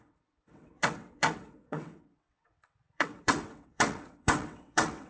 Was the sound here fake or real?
fake